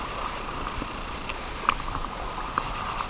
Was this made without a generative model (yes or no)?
yes